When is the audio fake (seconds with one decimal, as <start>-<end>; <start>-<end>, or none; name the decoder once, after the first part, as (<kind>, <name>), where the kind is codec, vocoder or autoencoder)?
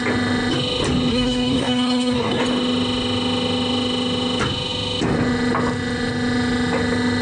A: 1.1-2.4 (codec, SNAC)